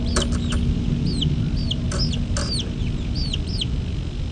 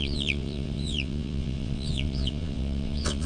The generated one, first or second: second